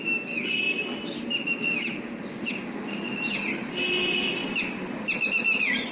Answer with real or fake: real